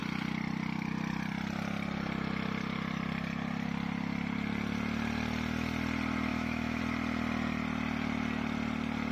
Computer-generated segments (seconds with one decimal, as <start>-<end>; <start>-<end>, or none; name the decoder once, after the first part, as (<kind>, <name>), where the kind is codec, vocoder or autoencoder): 6.3-6.8 (autoencoder, DAC-VAE)

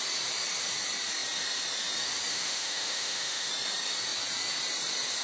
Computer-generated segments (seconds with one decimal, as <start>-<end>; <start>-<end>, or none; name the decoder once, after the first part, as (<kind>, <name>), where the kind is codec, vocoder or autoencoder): 2.3-3.5 (autoencoder, DAC-VAE)

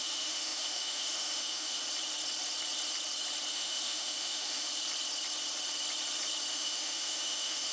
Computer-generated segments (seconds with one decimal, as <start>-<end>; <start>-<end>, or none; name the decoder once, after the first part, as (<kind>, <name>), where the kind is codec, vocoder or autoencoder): 0.0-1.8 (autoencoder, DAC-VAE); 3.5-4.7; 6.5-7.7

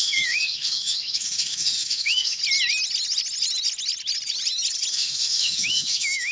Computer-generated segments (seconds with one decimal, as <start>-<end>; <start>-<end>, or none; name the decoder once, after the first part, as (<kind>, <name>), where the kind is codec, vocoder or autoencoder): 0.0-2.4 (autoencoder, DAC-VAE); 4.9-6.3

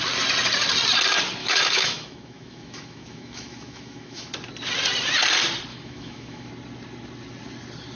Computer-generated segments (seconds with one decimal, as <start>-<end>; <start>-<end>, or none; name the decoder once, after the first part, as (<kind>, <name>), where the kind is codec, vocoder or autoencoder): 1.4-4.3 (autoencoder, DAC-VAE); 5.7-6.5